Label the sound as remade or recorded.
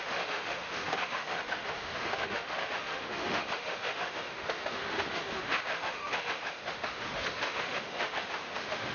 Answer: remade